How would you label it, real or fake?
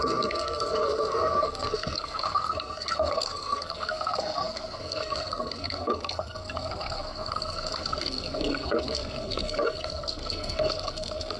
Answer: fake